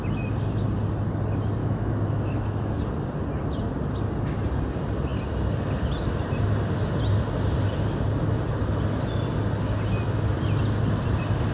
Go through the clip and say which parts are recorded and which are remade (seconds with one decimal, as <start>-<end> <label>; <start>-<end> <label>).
0.0-1.6 recorded; 1.6-2.8 remade; 2.8-11.5 recorded